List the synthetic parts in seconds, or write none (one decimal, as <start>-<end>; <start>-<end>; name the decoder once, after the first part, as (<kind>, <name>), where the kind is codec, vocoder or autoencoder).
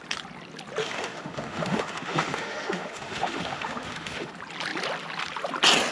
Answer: 0.8-4.3 (autoencoder, DAC-VAE)